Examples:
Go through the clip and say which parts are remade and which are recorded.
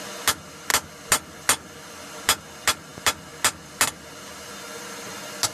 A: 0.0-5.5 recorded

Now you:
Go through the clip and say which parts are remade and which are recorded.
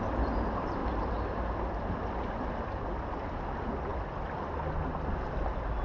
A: 0.0-5.8 recorded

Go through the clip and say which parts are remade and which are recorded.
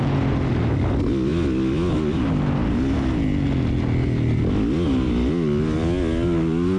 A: 0.0-6.8 recorded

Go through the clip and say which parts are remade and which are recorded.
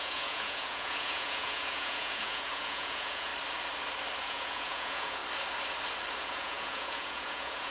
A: 0.0-3.3 remade; 3.3-4.2 recorded; 4.2-5.2 remade; 5.2-6.2 recorded; 6.2-7.7 remade